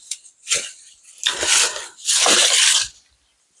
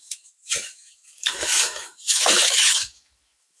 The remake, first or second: second